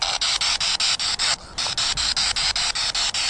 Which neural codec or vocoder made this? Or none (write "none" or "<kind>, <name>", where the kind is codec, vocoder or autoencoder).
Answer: none